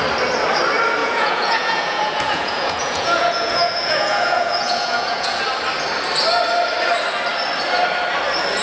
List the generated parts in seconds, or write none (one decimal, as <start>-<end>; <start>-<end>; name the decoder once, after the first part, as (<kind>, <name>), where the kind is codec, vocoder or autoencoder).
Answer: 1.0-5.4 (vocoder, Vocos)